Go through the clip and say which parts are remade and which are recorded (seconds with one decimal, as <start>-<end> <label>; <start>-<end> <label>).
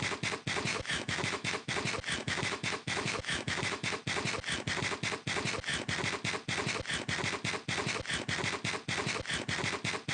0.0-0.7 recorded; 0.7-1.7 remade; 1.7-2.2 recorded; 2.2-4.0 remade; 4.0-10.1 recorded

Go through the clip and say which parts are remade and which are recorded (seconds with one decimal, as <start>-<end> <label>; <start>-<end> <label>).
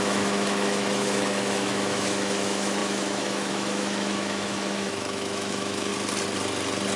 0.0-5.9 remade; 5.9-7.0 recorded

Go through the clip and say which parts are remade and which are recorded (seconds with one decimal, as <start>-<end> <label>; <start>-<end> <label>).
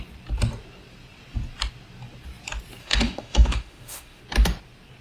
0.0-2.8 recorded; 2.8-4.2 remade; 4.2-5.0 recorded